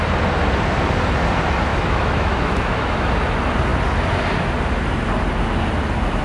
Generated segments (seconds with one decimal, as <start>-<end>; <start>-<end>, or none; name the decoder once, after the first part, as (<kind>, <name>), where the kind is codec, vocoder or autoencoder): 1.7-3.1 (autoencoder, DAC-VAE)